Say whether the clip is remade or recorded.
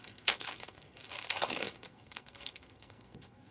remade